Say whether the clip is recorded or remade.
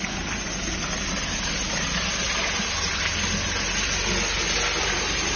recorded